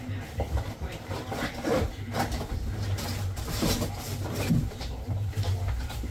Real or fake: fake